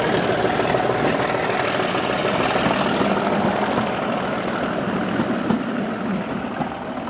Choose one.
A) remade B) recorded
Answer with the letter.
B